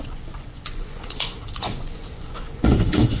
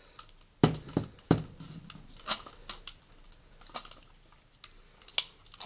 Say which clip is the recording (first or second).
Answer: second